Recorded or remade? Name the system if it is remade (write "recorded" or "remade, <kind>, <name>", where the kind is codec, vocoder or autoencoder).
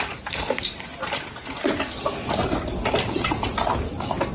recorded